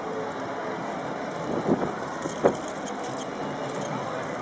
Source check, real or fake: real